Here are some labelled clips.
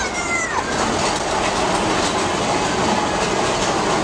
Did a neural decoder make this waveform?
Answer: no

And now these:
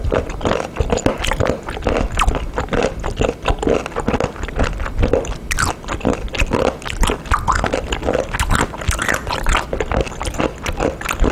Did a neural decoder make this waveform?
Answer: no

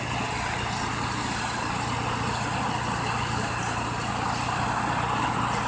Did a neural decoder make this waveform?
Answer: no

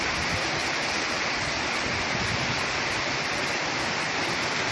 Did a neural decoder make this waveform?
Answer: no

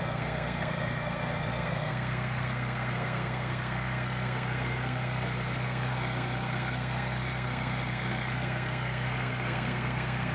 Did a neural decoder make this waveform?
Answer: yes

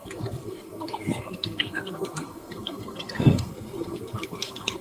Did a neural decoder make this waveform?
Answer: yes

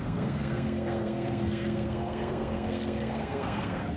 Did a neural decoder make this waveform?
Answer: yes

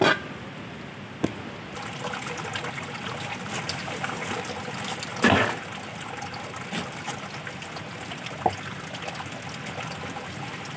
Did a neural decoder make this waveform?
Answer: no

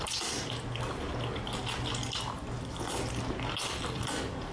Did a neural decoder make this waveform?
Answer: no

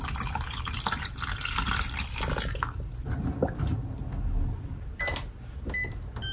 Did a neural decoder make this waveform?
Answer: no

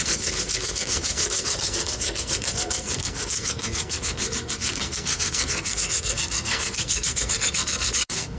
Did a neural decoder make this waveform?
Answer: yes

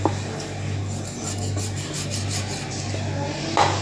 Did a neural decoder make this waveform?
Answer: no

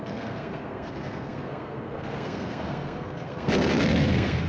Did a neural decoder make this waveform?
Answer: yes